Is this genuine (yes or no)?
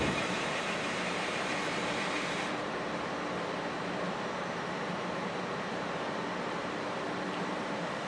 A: no